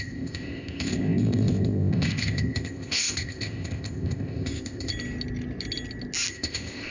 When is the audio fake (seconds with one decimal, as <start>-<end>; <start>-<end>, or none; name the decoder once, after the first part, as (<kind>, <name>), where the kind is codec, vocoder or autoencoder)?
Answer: 0.0-4.9 (codec, ZipCodec); 6.3-6.9